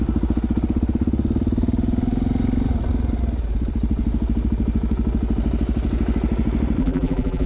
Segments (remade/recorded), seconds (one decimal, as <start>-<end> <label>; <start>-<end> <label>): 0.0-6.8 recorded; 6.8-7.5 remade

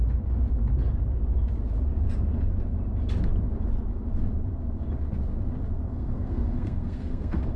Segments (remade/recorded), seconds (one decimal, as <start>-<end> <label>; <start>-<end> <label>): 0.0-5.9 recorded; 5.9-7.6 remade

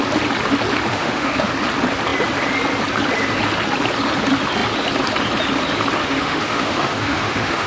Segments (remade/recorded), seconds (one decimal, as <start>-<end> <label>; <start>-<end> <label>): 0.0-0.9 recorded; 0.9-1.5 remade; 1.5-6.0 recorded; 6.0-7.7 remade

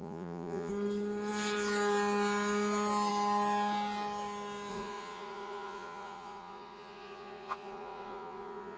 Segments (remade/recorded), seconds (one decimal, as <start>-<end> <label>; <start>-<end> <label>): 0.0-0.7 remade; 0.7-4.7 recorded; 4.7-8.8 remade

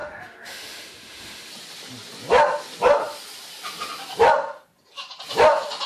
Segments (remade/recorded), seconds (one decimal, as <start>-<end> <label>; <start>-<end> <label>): 0.0-1.5 remade; 1.5-5.9 recorded

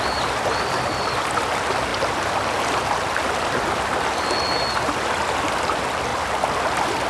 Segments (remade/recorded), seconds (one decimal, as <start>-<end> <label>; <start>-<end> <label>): 0.0-7.1 recorded